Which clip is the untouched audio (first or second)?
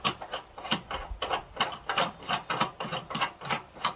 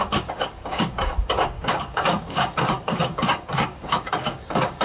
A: first